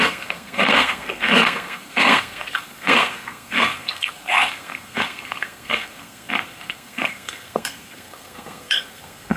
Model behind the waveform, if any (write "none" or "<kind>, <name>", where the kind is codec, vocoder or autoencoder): codec, SNAC